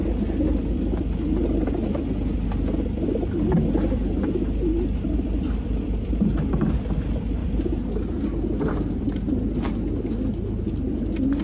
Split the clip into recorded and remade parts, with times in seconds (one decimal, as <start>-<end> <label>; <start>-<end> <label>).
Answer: 0.0-11.4 recorded